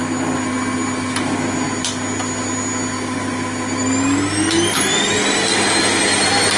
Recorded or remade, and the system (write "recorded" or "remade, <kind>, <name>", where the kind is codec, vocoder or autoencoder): recorded